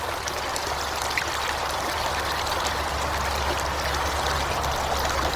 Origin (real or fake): real